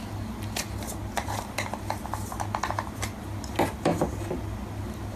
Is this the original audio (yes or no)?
yes